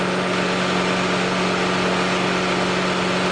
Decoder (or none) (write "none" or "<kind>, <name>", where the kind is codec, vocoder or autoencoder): none